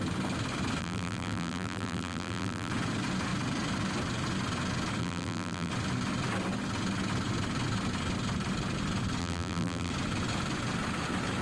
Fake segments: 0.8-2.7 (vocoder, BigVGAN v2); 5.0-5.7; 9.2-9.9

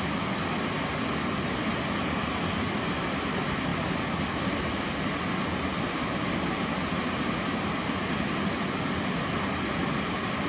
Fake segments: none

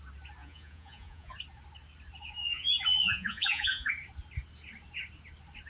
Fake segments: 0.4-1.3 (vocoder, Vocos); 2.4-3.9

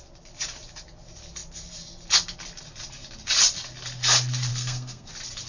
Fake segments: 4.5-5.1 (codec, SNAC)